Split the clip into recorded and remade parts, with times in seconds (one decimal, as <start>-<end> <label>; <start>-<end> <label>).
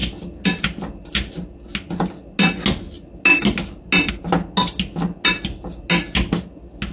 0.0-6.9 recorded